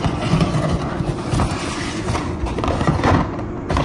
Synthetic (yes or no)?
yes